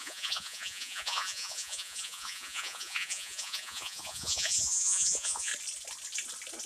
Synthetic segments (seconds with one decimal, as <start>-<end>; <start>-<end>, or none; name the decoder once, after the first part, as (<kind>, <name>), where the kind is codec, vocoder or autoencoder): 0.0-5.5 (vocoder, Vocos)